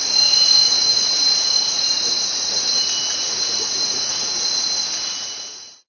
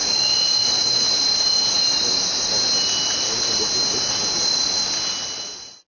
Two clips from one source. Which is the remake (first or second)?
first